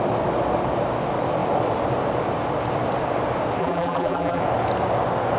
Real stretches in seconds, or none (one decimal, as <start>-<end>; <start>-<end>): 0.0-3.6; 4.4-5.4